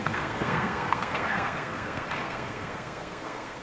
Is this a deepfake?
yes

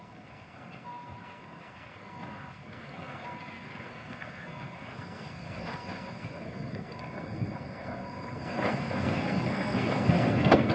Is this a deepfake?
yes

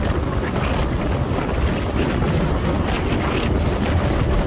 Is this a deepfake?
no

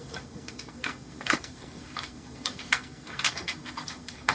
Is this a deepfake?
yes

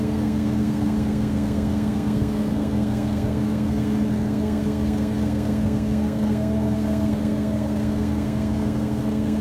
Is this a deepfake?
yes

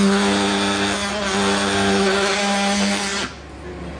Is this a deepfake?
no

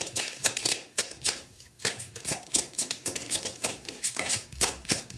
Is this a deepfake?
yes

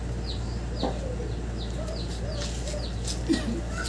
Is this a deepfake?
no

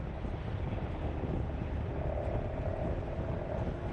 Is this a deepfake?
no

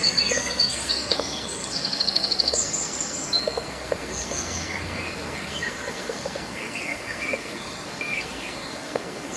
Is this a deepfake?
yes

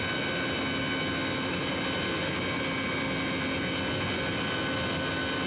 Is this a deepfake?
no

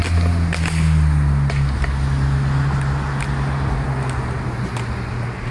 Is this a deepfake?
no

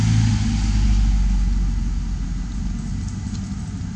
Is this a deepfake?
no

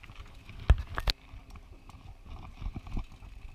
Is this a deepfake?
no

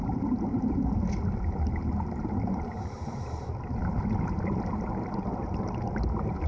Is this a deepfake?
no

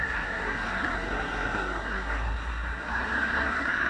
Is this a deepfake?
yes